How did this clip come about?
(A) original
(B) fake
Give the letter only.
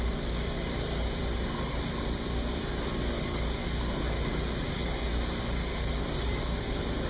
A